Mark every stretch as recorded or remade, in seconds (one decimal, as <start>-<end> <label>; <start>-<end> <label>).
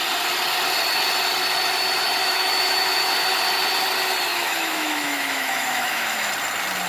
0.0-2.2 recorded; 2.2-3.0 remade; 3.0-4.3 recorded; 4.3-6.3 remade; 6.3-6.9 recorded